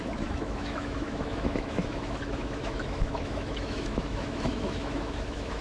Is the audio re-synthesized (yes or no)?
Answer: yes